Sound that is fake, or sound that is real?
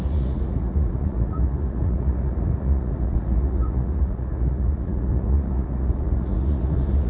fake